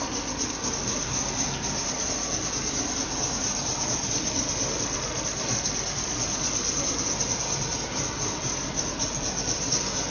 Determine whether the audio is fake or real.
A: real